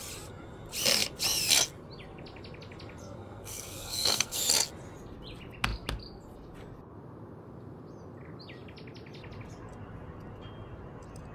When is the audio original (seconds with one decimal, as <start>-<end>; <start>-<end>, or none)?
0.0-3.0; 4.4-11.3